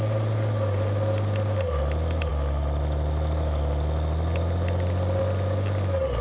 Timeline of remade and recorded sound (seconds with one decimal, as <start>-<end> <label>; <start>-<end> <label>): 0.0-6.2 recorded